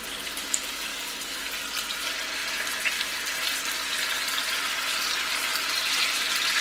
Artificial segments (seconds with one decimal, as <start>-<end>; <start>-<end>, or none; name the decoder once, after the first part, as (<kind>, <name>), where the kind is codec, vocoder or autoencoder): 0.9-1.5 (codec, DAC)